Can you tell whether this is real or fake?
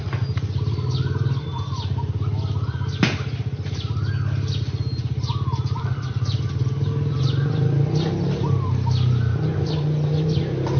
real